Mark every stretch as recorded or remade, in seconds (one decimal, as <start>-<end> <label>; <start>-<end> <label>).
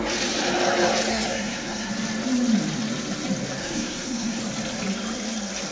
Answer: 0.0-1.1 recorded; 1.1-1.9 remade; 1.9-3.6 recorded; 3.6-4.4 remade; 4.4-5.7 recorded